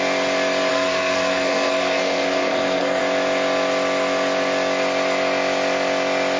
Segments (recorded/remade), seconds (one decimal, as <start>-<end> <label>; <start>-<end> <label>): 0.0-0.7 recorded; 0.7-3.0 remade; 3.0-6.4 recorded